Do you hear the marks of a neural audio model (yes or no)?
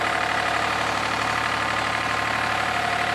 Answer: yes